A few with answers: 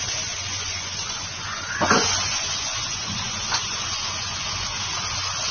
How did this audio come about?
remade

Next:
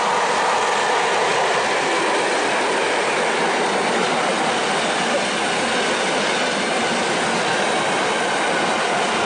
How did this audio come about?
recorded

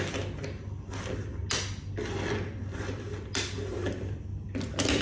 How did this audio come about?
recorded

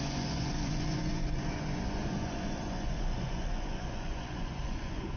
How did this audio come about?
remade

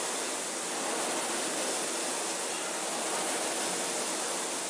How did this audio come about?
recorded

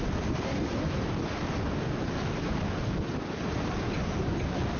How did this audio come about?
recorded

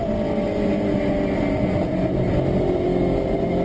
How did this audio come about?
recorded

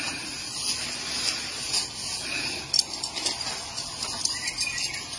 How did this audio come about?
recorded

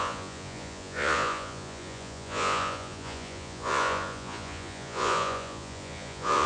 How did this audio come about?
remade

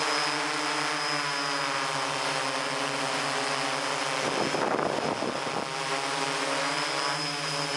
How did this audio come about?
recorded